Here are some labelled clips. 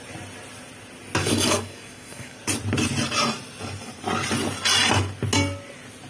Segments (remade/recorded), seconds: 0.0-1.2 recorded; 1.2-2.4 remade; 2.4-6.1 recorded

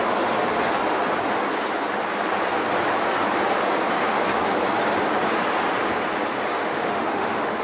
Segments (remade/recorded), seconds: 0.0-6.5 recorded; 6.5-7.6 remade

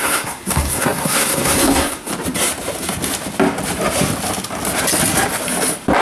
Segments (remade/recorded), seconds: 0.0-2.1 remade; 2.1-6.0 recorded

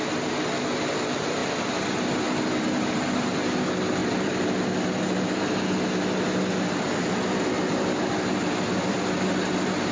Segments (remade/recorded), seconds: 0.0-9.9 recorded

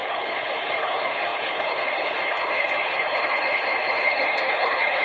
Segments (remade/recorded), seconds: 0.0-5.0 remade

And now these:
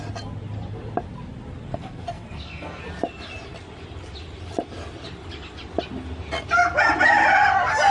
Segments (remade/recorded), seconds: 0.0-1.7 recorded; 1.7-2.8 remade; 2.8-7.9 recorded

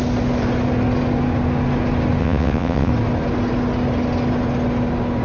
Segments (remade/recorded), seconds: 0.0-2.2 recorded; 2.2-2.9 remade; 2.9-5.2 recorded

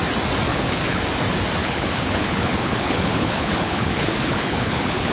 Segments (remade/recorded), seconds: 0.0-0.5 recorded; 0.5-1.0 remade; 1.0-1.6 recorded; 1.6-5.1 remade